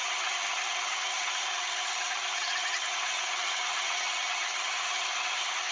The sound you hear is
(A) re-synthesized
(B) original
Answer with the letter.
A